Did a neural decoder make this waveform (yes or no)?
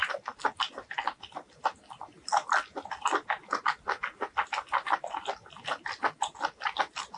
no